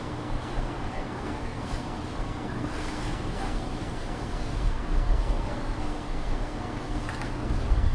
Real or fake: fake